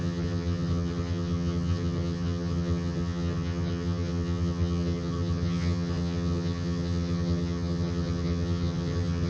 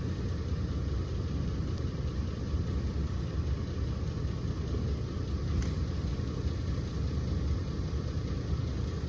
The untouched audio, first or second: second